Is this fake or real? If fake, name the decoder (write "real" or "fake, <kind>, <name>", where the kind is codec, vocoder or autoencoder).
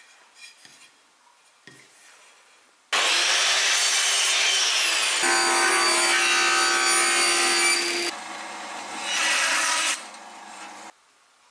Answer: real